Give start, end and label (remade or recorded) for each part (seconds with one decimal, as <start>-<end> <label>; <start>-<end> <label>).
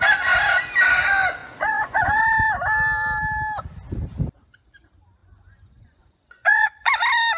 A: 0.0-1.4 recorded; 1.4-2.2 remade; 2.2-5.2 recorded; 5.2-6.9 remade; 6.9-7.4 recorded